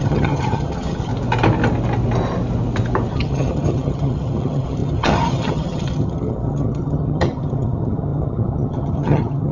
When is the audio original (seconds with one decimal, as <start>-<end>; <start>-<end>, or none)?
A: 1.1-3.1